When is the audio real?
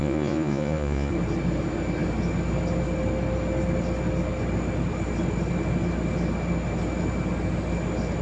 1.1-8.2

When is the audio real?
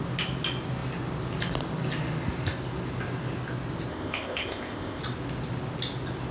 0.0-3.9; 5.0-6.3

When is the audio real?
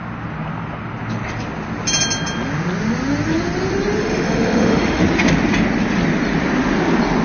0.0-4.0; 5.0-7.2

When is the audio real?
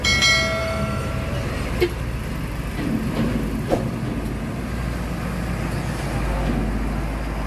0.0-0.6; 1.1-7.5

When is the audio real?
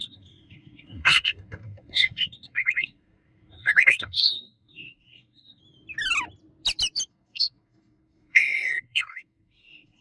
5.6-7.1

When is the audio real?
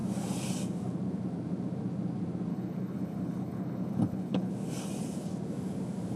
0.0-2.5; 4.5-6.2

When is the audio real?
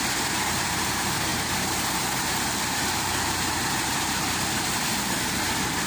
none